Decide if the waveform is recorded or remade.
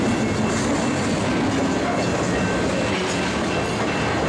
recorded